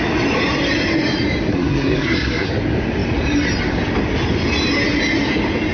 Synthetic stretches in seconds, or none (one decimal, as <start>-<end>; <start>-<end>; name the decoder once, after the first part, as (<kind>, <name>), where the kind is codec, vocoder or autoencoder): 1.5-2.5 (codec, SNAC)